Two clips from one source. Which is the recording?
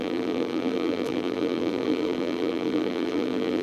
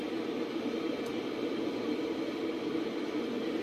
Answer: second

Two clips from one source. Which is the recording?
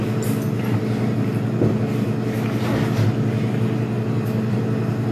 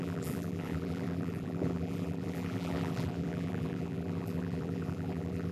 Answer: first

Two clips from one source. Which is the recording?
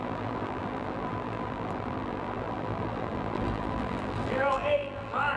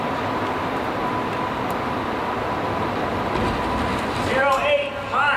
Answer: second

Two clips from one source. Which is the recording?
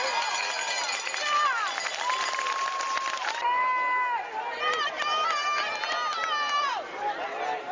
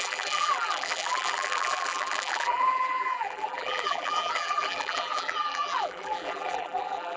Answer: first